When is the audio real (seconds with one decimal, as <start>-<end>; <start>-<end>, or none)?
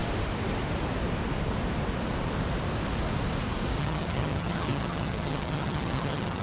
0.0-3.8